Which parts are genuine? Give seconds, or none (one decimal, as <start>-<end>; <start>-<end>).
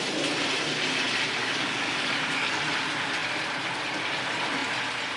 0.0-1.4; 2.6-5.2